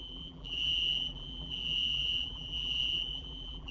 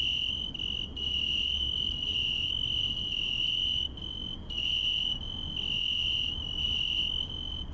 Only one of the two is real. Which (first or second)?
second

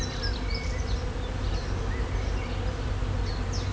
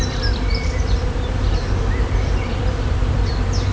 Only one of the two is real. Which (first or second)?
first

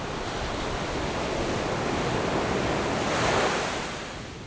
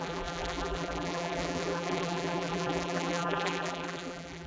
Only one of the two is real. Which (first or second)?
first